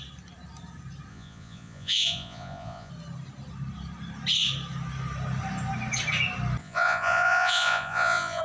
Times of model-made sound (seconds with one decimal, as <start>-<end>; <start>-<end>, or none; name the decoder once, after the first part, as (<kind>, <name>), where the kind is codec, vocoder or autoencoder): 1.1-2.9 (vocoder, Vocos); 6.6-8.4